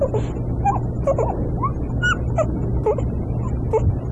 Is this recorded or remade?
recorded